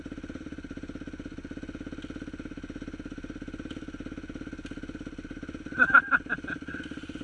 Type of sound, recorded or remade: recorded